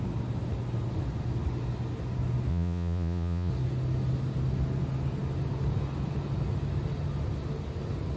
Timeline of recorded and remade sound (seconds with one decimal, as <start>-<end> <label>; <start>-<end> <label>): 0.0-2.5 recorded; 2.5-3.5 remade; 3.5-8.2 recorded